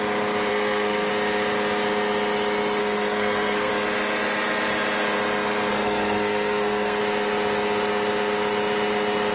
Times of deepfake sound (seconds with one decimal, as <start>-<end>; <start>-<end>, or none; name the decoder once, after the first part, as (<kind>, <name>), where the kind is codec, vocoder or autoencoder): 0.5-1.1 (codec, SNAC); 2.8-3.7; 5.7-7.0